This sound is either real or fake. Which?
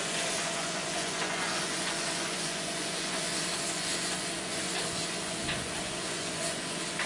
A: fake